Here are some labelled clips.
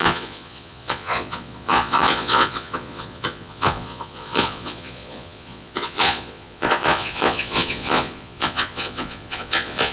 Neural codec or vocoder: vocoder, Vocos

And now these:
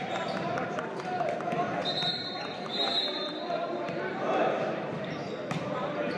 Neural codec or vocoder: vocoder, BigVGAN v2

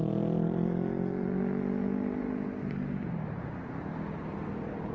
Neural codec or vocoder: none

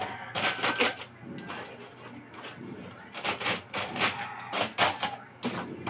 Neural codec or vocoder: none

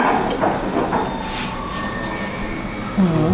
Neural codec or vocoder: none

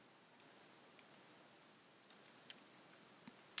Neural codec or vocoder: none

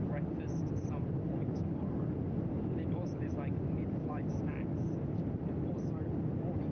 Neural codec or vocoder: none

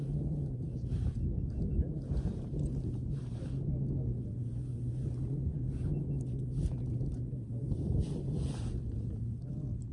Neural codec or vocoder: none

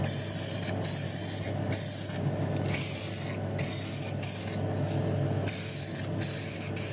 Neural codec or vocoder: none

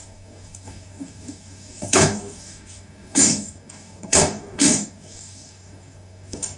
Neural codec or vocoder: codec, DAC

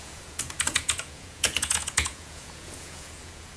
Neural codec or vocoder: vocoder, Vocos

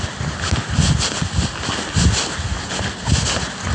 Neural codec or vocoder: none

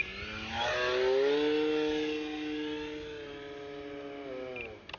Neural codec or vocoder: none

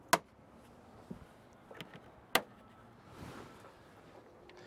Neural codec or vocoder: none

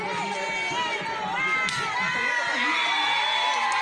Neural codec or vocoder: none